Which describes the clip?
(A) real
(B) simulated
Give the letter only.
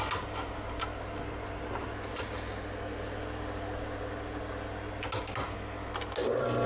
A